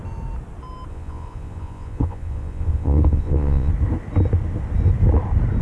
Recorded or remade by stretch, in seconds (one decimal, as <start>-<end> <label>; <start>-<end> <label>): 0.0-0.9 recorded; 0.9-3.7 remade; 3.7-5.6 recorded